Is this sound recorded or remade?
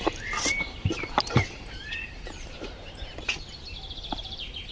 remade